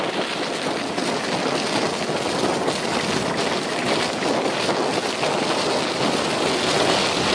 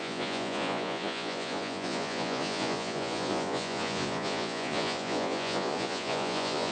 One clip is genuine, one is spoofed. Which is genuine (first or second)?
first